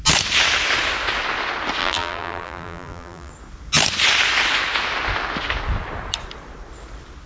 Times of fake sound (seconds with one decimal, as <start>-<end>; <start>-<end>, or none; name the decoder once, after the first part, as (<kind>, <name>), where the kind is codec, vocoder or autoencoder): 1.8-3.3 (vocoder, BigVGAN v2)